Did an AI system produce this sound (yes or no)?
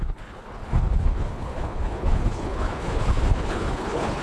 yes